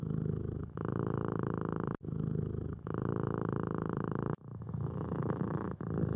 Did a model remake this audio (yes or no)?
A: yes